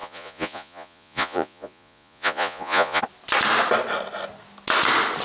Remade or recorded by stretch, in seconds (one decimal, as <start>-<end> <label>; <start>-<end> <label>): 0.0-3.0 remade; 3.0-5.2 recorded